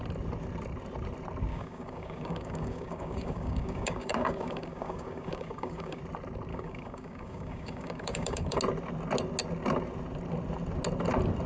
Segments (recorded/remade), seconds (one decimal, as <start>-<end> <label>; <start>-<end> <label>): 0.0-1.5 recorded; 1.5-6.0 remade; 6.0-6.5 recorded; 6.5-8.6 remade; 8.6-11.5 recorded